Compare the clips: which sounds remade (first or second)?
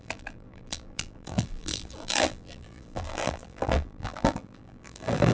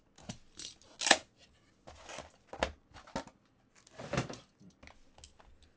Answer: first